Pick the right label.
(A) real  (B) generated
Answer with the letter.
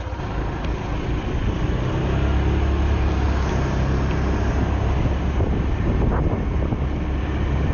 A